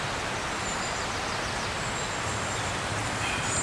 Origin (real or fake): real